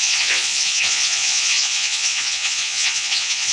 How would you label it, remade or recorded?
remade